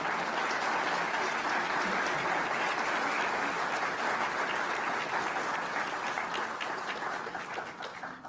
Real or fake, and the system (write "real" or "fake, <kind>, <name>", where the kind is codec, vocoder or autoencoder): real